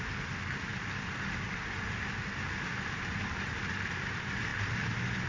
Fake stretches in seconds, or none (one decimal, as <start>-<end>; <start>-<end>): none